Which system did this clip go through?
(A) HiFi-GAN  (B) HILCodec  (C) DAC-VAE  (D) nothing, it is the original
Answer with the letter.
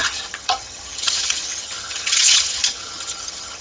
A